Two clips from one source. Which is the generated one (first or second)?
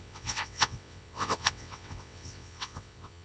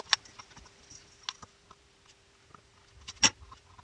first